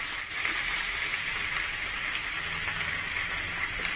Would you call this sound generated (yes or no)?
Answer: no